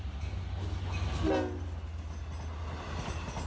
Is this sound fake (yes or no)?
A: no